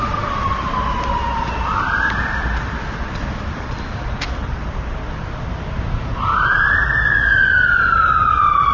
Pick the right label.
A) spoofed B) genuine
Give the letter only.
B